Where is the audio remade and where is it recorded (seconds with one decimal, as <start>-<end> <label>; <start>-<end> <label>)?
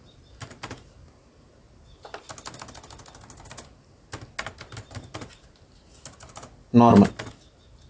0.0-7.9 recorded